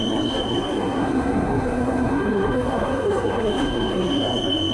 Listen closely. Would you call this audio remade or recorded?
remade